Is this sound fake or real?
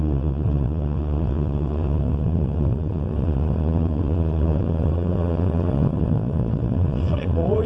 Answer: fake